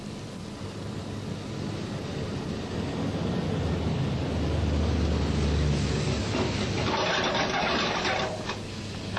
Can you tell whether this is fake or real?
real